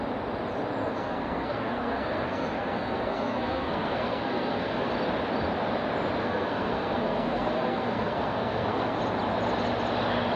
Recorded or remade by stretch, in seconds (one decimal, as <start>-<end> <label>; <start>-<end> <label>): 0.0-0.8 recorded; 0.8-4.9 remade; 4.9-6.2 recorded; 6.2-9.0 remade; 9.0-10.4 recorded